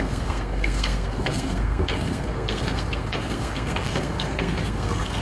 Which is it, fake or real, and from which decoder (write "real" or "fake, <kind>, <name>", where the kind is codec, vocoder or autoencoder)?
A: fake, codec, SNAC